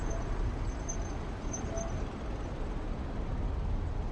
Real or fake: real